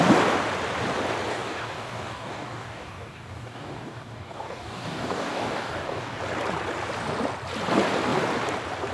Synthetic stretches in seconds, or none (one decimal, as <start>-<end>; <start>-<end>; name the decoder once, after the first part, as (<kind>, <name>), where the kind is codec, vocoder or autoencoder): 1.3-6.2 (codec, DAC)